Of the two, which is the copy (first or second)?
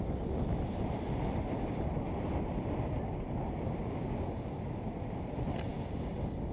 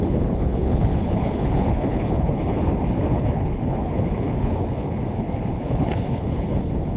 second